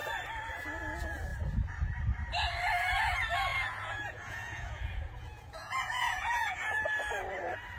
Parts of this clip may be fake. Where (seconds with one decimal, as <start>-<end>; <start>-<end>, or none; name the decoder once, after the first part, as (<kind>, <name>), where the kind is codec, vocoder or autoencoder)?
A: 3.5-6.8 (vocoder, Vocos)